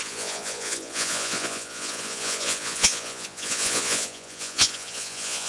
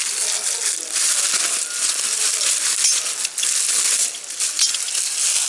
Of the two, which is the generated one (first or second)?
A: first